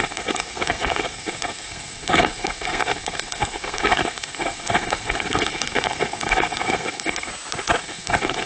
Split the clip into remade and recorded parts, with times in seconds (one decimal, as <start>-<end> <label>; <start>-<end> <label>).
0.0-7.3 remade; 7.3-7.8 recorded; 7.8-8.5 remade